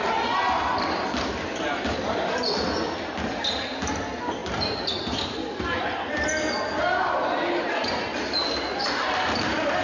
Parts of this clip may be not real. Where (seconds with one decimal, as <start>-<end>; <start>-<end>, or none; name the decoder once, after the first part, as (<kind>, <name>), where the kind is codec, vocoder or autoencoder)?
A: none